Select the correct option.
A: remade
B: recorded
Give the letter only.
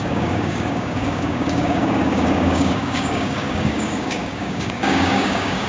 A